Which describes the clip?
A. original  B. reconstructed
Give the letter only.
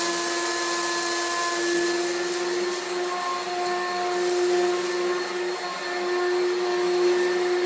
A